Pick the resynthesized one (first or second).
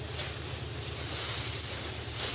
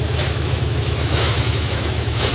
second